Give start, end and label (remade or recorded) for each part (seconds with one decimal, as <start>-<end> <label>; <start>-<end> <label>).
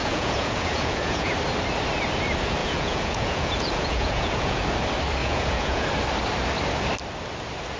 0.0-1.3 remade; 1.3-2.6 recorded; 2.6-4.6 remade; 4.6-5.2 recorded; 5.2-5.9 remade; 5.9-7.8 recorded